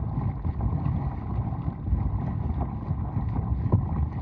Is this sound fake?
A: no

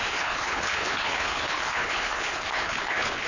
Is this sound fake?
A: yes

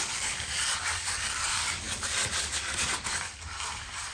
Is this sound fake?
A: yes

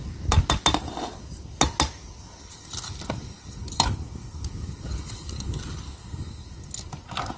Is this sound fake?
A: no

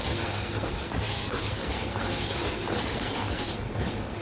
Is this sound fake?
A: yes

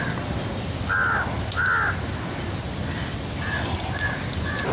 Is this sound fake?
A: no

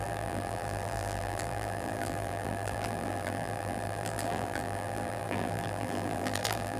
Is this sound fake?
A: yes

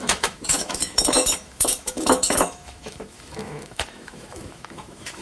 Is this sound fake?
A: yes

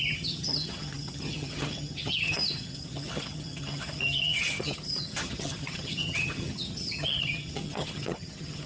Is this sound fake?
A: yes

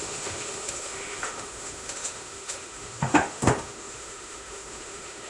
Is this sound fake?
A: yes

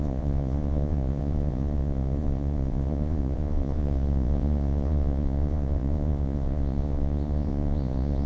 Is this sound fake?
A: yes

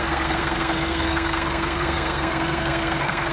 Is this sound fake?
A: yes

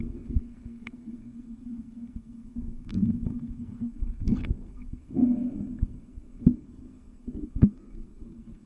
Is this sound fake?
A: yes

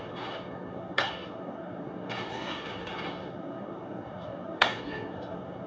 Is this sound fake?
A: yes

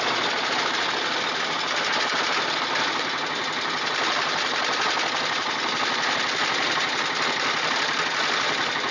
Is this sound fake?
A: no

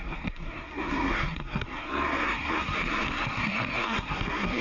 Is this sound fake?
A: yes